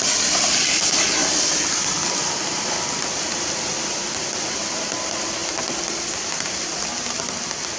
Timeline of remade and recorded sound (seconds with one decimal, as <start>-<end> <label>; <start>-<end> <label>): 0.0-7.8 recorded